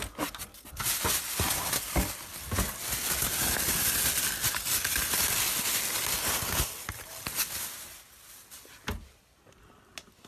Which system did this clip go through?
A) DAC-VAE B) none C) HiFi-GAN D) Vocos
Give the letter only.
B